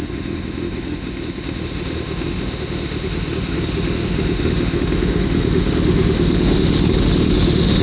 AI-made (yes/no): yes